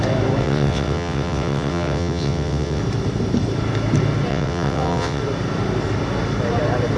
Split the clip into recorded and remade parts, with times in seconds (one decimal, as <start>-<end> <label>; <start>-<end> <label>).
0.0-0.4 recorded; 0.4-2.8 remade; 2.8-4.3 recorded; 4.3-5.2 remade; 5.2-7.0 recorded